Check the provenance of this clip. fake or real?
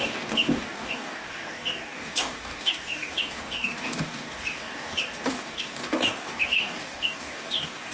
fake